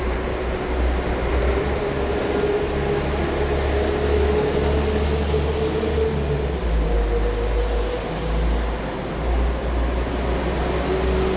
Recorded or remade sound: recorded